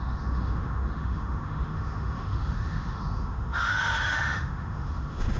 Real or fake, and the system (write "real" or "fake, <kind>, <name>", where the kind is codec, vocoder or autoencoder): fake, autoencoder, DAC-VAE